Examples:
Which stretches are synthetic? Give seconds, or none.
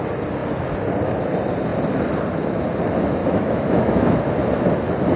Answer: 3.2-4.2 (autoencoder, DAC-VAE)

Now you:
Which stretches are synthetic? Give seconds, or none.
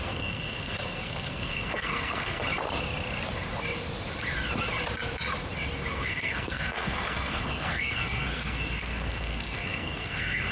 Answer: 0.0-2.4 (codec, SNAC); 5.9-10.5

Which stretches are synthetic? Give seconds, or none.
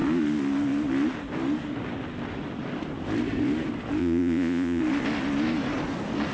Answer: 4.0-4.8 (vocoder, Vocos)